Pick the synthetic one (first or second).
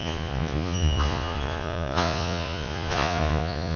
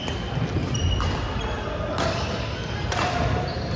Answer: first